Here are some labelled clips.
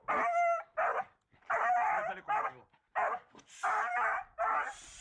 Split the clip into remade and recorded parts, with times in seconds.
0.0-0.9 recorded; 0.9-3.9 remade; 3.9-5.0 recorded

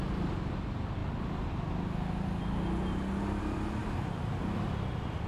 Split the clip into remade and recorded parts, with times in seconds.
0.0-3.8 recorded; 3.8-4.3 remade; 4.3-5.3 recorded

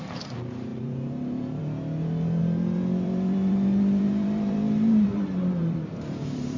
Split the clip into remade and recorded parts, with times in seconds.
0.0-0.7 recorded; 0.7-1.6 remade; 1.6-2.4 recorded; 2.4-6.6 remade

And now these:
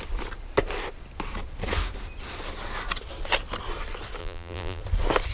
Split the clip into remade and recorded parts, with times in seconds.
0.0-4.2 recorded; 4.2-4.8 remade; 4.8-5.3 recorded

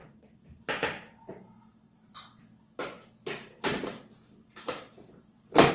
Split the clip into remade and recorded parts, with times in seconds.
0.0-2.2 remade; 2.2-3.4 recorded; 3.4-5.7 remade

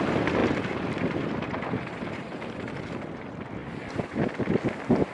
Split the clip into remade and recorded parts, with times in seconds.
0.0-0.4 recorded; 0.4-1.4 remade; 1.4-3.6 recorded; 3.6-4.3 remade; 4.3-5.1 recorded